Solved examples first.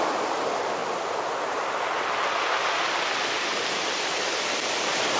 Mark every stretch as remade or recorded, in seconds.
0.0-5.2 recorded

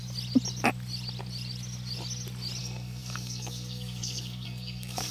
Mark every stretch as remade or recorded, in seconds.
0.0-2.6 recorded; 2.6-5.1 remade

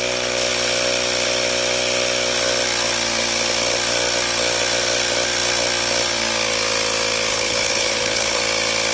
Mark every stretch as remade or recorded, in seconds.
0.0-7.3 recorded; 7.3-8.4 remade; 8.4-8.9 recorded